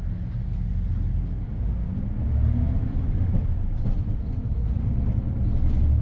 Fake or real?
real